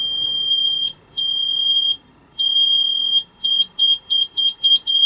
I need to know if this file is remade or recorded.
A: remade